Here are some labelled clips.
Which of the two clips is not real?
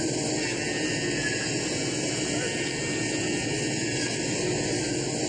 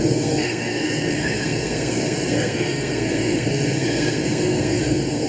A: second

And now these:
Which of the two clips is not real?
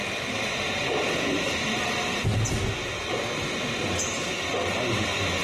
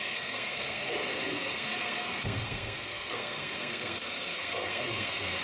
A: second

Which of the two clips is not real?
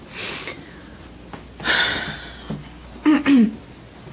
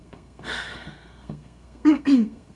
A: second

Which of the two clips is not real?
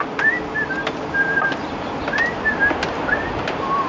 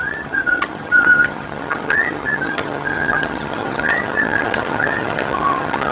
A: second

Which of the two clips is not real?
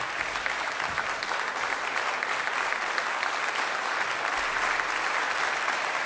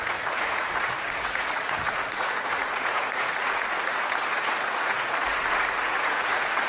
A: second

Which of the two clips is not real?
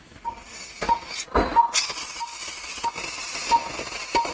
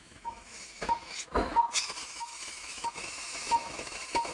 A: second